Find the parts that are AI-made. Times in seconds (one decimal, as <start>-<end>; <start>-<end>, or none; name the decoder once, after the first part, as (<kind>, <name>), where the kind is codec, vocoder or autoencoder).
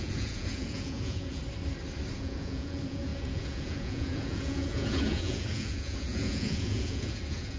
0.0-1.4 (vocoder, Vocos); 2.2-7.6